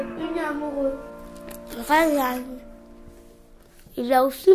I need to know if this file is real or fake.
real